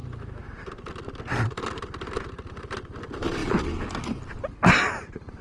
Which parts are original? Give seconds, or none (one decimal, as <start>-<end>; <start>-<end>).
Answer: 0.0-5.4